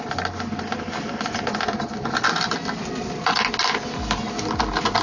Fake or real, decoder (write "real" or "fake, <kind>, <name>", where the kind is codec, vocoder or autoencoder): real